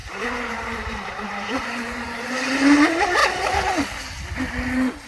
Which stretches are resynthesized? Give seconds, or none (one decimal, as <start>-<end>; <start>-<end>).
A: 0.0-3.2